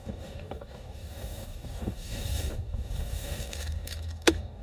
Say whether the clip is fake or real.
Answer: fake